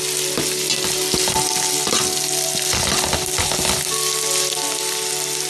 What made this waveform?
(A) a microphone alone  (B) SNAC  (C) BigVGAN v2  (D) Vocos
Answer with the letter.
A